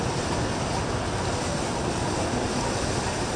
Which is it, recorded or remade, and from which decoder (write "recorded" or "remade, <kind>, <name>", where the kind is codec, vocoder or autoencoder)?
recorded